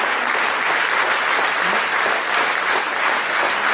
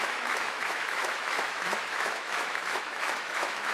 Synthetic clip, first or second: second